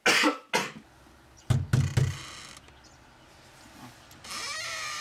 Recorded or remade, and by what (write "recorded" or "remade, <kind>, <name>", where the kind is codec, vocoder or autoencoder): recorded